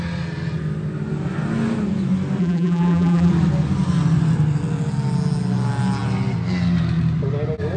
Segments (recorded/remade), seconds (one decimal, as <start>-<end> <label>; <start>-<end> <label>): 0.0-2.4 recorded; 2.4-3.3 remade; 3.3-7.8 recorded